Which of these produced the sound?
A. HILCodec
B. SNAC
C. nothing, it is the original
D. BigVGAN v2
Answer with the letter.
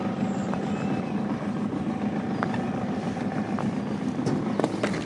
C